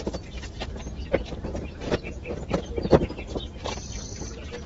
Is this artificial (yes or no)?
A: yes